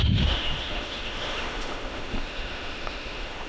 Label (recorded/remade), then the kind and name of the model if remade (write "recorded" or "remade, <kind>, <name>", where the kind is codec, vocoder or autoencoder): remade, autoencoder, DAC-VAE